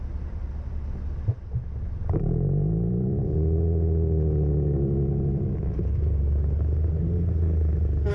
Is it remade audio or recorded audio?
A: recorded